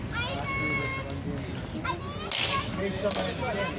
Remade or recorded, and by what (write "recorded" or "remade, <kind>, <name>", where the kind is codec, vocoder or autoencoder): recorded